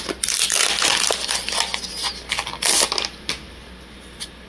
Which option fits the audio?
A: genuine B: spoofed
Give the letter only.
A